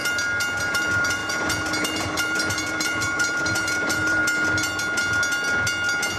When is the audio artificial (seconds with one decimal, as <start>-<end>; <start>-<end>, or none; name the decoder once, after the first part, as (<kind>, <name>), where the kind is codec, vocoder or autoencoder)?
0.6-4.2 (vocoder, BigVGAN v2)